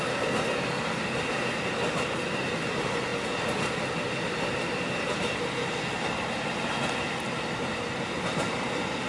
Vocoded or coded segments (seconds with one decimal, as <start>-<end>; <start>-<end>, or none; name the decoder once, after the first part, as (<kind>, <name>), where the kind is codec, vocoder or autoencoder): none